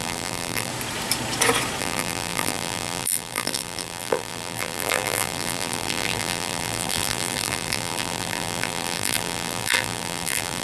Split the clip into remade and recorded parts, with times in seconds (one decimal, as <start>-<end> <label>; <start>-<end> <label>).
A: 0.0-0.7 remade; 0.7-1.8 recorded; 1.8-10.6 remade